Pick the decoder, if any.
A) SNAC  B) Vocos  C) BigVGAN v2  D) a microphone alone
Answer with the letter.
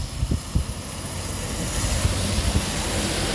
D